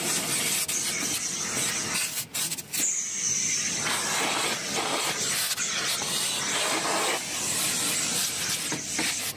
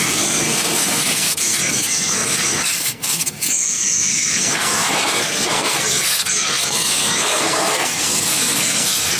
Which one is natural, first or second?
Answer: first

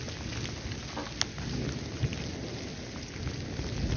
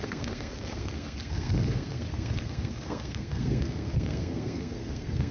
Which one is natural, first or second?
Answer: first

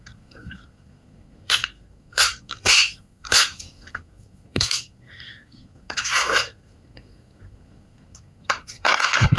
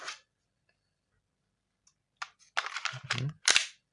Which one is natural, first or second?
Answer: second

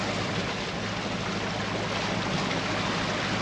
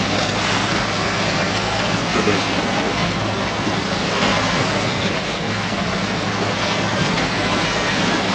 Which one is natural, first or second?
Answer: first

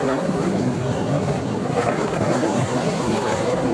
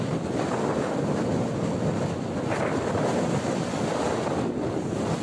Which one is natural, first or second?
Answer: second